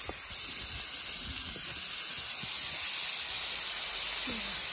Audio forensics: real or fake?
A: real